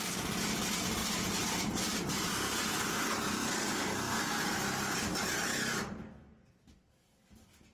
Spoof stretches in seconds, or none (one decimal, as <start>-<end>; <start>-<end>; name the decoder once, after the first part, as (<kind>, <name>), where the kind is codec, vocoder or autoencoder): 1.0-2.3 (vocoder, BigVGAN v2)

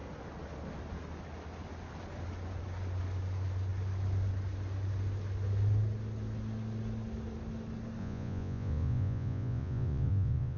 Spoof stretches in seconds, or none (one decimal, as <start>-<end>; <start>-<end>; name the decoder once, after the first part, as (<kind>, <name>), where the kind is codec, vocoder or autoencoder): 8.0-10.6 (vocoder, Vocos)

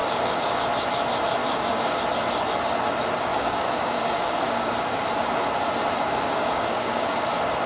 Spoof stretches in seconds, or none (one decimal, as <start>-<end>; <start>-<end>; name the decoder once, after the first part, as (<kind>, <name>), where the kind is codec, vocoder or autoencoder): 0.0-0.6 (codec, DAC); 1.4-2.0; 3.3-4.7; 6.0-7.3

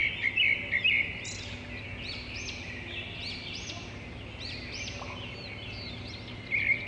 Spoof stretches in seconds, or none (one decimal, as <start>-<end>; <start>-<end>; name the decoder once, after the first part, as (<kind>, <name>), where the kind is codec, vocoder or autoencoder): none

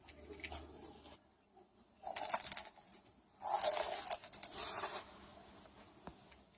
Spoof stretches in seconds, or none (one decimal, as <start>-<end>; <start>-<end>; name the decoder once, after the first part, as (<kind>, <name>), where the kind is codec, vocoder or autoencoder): none

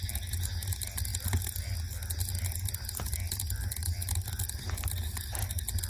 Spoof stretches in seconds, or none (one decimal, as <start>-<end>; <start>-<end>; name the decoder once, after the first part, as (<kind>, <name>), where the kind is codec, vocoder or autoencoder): none